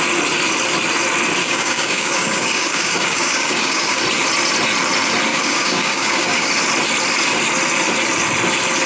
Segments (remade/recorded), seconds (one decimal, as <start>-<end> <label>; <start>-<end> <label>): 0.0-1.4 recorded; 1.4-4.0 remade; 4.0-5.3 recorded; 5.3-6.5 remade; 6.5-8.9 recorded